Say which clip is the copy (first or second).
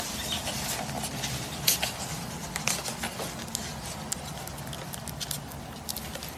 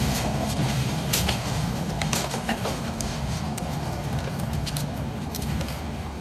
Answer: second